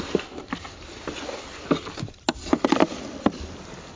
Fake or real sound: real